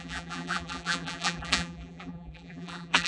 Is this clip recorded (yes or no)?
no